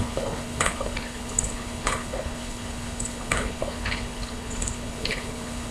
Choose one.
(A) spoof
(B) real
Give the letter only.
A